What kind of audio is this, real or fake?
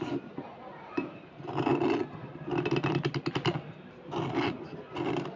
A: real